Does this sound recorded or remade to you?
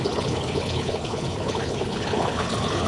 remade